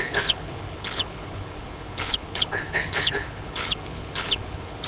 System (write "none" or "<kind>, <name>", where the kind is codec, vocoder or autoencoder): codec, HILCodec